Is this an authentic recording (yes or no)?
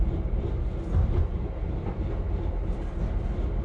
yes